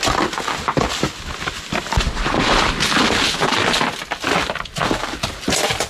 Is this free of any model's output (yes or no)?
yes